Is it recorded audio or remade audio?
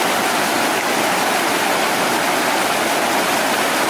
recorded